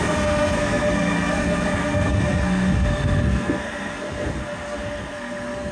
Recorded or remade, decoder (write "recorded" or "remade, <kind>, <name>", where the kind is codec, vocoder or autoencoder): remade, codec, SNAC